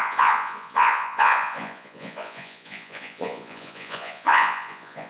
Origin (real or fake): fake